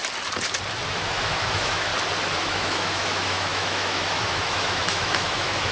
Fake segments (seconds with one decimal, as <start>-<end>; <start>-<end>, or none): 0.9-1.9; 2.4-5.7